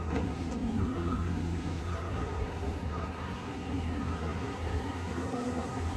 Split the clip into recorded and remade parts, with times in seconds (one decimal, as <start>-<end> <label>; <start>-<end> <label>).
0.0-6.0 remade